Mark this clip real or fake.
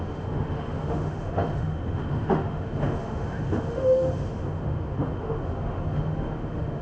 fake